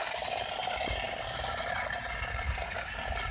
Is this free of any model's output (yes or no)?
yes